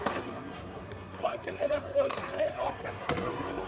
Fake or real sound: fake